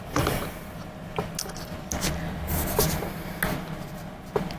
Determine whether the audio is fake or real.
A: real